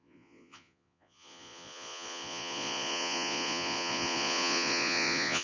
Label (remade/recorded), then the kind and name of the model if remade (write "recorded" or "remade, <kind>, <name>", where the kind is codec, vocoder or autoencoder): remade, vocoder, Vocos